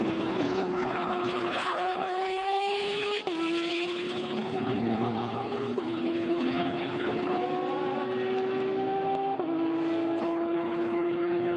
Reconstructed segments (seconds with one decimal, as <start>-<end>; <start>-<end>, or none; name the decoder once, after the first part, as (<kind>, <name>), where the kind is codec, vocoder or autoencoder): 0.0-3.2 (codec, HILCodec); 3.7-7.4; 10.2-11.6

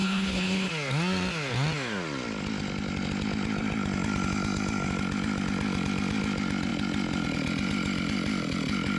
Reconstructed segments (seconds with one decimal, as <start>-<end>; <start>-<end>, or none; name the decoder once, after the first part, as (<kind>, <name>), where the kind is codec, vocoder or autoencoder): 0.0-0.7 (codec, HILCodec)

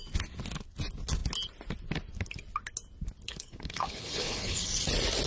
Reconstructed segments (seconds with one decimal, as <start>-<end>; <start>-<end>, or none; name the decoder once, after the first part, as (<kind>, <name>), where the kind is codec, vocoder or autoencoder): 3.3-4.7 (codec, HILCodec)

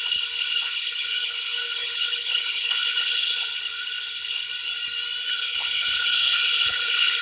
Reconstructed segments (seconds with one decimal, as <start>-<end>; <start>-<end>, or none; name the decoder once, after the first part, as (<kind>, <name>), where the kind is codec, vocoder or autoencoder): 0.0-4.5 (codec, HILCodec); 5.3-7.2

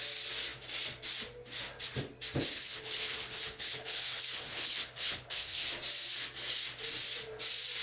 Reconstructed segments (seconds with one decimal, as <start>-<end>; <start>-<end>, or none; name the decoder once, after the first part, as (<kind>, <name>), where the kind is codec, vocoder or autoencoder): 2.5-5.7 (codec, HILCodec)